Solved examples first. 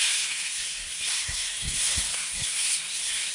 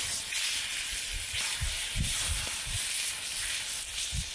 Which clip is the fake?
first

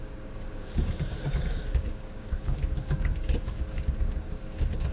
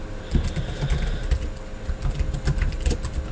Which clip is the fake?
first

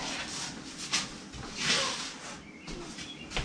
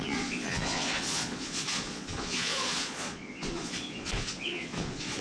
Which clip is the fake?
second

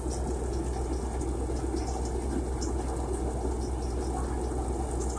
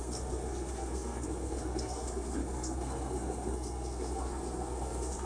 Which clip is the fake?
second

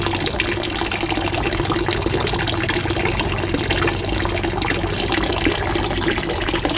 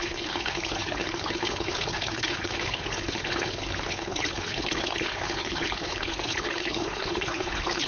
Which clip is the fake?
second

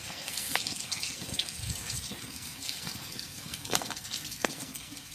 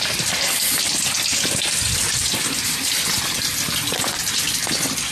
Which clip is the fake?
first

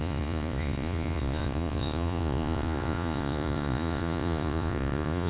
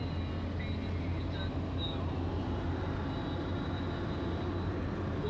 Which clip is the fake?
first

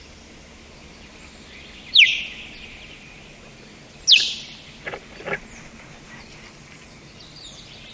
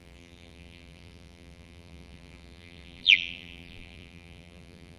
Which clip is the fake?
second